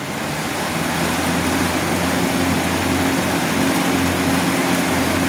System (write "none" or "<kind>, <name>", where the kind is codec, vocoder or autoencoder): none